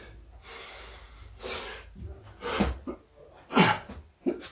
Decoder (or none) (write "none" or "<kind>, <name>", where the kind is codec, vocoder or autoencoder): none